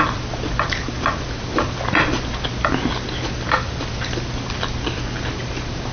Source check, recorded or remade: recorded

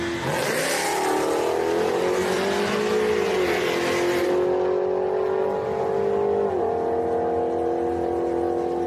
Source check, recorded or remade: recorded